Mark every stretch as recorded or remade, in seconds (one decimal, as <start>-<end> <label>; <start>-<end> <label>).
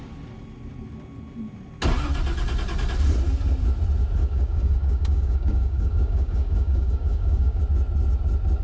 0.0-4.2 recorded; 4.2-7.6 remade; 7.6-8.6 recorded